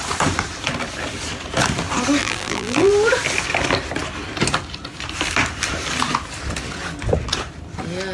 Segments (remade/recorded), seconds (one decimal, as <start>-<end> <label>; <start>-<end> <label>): 0.0-2.2 recorded; 2.2-2.9 remade; 2.9-8.1 recorded